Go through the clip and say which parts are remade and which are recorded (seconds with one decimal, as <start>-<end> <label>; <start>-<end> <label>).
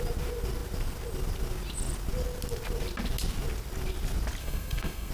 0.0-4.4 recorded; 4.4-5.1 remade